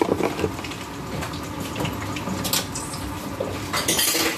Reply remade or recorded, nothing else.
recorded